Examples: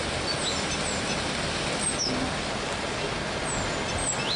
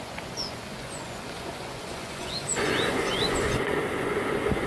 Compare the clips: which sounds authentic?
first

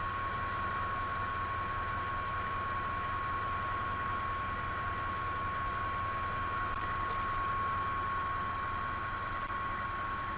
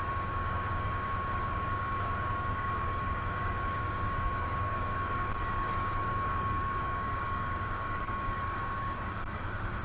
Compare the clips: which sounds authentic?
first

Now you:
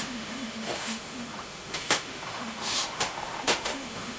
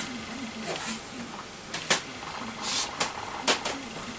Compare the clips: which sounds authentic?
second